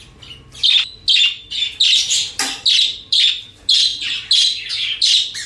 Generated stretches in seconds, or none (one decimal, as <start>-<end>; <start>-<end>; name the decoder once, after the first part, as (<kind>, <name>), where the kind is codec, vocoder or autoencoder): none